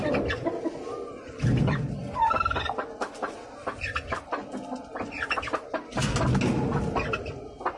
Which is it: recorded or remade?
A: recorded